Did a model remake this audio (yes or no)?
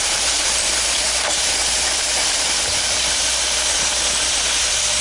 yes